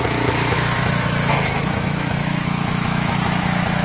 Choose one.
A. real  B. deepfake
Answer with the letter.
B